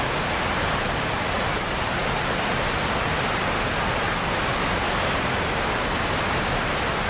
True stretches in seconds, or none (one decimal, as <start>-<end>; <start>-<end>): 0.0-7.1